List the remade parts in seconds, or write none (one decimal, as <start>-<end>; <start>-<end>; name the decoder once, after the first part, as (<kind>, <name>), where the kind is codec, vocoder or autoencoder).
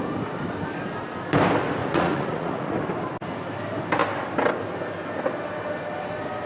1.8-2.8 (vocoder, Vocos)